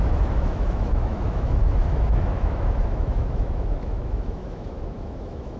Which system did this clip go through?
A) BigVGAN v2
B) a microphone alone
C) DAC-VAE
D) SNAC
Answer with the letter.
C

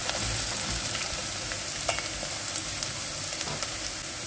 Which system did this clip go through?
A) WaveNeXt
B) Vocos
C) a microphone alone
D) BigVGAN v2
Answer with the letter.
C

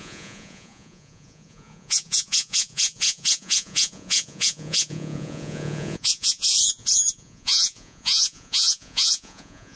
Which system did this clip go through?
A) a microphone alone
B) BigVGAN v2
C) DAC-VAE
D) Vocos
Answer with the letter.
D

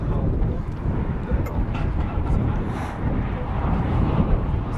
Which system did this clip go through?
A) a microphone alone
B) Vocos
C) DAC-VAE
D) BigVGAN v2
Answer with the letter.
D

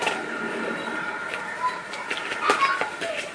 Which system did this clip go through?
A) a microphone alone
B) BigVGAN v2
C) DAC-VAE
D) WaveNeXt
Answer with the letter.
A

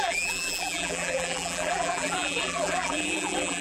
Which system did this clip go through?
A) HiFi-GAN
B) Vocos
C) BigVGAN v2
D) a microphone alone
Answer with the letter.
C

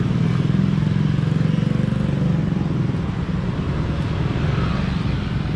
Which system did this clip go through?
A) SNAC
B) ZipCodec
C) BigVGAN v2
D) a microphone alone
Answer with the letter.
D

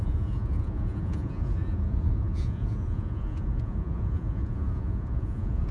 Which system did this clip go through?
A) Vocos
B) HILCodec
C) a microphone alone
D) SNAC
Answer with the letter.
A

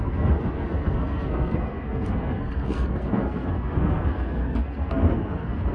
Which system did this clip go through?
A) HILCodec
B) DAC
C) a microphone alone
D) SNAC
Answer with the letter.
D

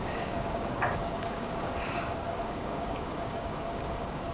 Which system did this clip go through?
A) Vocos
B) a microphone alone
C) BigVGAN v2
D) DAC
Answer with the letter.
D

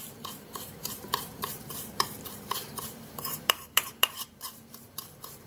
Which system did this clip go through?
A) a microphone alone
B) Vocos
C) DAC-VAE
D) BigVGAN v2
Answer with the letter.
D